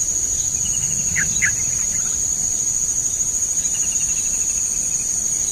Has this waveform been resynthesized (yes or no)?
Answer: no